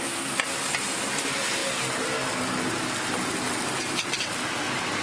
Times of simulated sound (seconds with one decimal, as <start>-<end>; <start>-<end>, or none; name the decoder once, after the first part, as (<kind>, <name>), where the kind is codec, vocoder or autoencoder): none